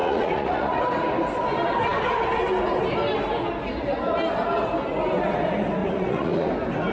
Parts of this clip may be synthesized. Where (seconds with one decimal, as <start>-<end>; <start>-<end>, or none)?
0.0-0.8; 5.8-6.5